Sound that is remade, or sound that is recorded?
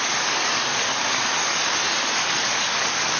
remade